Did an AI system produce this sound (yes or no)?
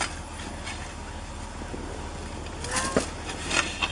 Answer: no